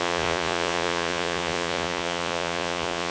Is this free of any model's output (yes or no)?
no